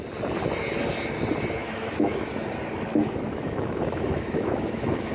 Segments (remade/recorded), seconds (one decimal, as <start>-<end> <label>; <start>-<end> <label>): 0.0-1.6 recorded; 1.6-2.3 remade; 2.3-2.9 recorded; 2.9-5.1 remade